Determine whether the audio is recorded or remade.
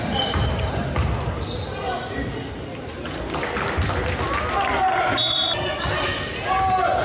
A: recorded